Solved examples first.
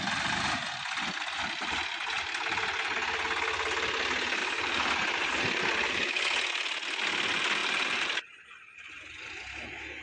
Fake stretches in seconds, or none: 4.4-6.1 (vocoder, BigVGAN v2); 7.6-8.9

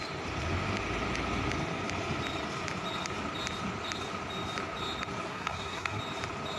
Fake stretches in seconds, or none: 5.3-6.0 (codec, SNAC)